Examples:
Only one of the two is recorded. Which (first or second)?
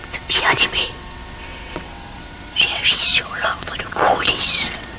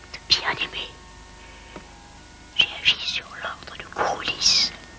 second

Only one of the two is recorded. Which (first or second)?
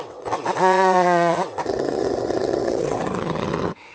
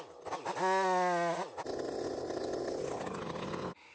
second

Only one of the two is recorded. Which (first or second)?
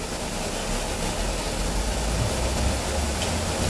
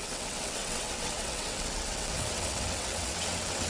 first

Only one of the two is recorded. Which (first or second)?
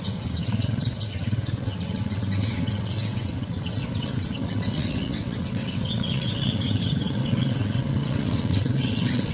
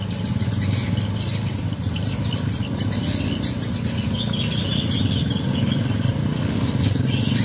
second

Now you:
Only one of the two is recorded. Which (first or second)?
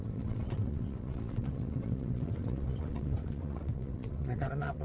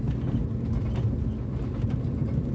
second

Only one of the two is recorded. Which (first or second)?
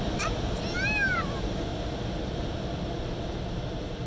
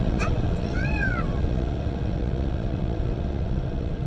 first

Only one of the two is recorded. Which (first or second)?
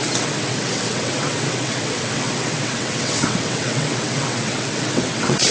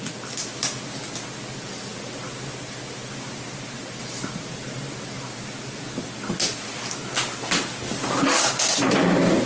second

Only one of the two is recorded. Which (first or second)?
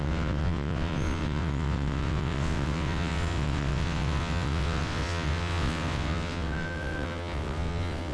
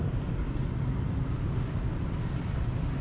second